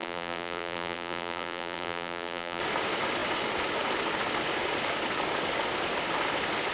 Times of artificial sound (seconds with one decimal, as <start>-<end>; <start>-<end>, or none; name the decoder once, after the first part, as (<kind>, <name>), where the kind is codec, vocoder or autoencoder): 0.0-2.6 (vocoder, BigVGAN v2)